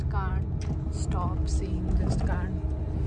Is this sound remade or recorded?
recorded